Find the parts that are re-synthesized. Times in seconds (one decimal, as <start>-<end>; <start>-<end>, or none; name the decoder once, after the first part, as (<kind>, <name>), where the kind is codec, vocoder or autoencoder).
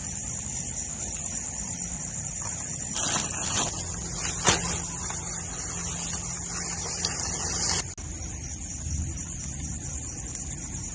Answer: none